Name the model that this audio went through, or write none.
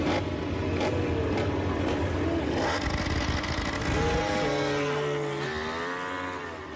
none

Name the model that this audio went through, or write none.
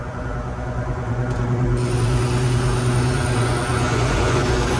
vocoder, Vocos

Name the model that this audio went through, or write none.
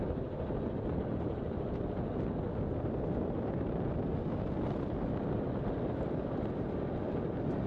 none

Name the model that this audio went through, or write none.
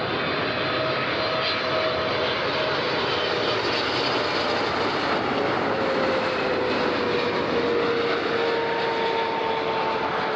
none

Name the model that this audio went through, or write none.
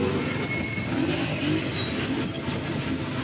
none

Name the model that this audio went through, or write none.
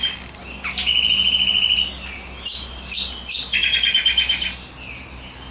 none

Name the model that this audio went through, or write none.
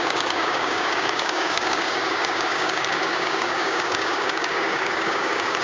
codec, DAC